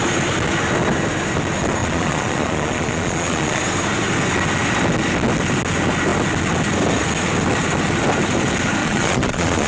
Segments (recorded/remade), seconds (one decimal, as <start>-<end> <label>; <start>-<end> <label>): 0.0-1.8 recorded; 1.8-3.6 remade; 3.6-8.8 recorded; 8.8-9.7 remade